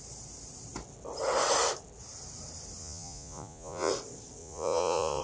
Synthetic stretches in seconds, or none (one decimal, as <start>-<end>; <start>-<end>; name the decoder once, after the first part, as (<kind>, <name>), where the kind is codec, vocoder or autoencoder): 2.8-3.9 (vocoder, Vocos); 4.4-5.2